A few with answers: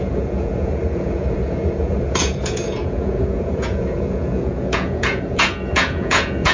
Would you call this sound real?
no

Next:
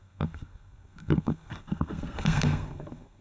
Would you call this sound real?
no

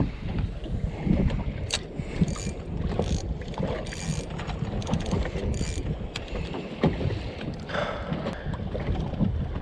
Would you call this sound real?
yes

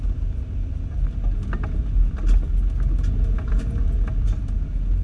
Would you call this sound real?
yes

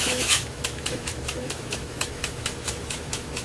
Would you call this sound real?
no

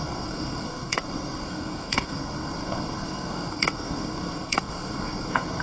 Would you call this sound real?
no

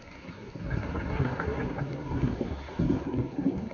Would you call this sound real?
no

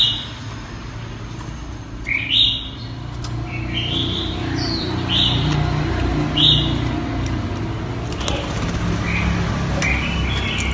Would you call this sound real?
yes